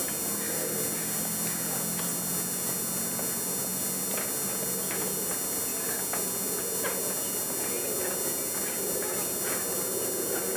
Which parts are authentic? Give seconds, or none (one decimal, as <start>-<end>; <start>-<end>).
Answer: 0.0-10.6